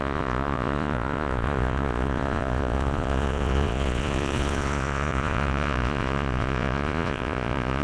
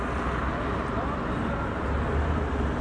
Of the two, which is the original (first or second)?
second